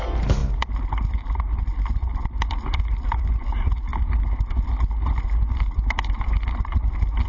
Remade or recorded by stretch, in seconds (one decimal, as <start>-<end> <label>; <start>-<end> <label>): 0.0-7.3 recorded